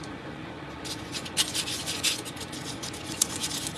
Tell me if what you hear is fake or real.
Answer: fake